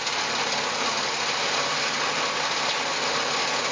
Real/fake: real